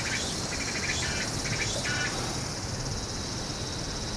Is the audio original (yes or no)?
yes